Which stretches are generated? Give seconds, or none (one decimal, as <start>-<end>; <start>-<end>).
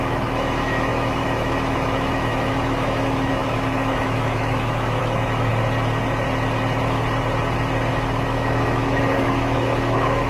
0.0-5.5; 7.9-10.3